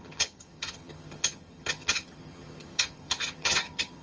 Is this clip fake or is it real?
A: fake